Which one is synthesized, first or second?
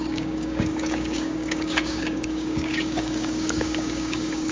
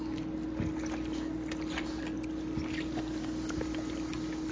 first